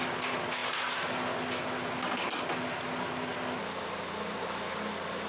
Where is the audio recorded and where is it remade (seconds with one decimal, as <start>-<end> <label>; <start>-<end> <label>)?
0.0-5.3 recorded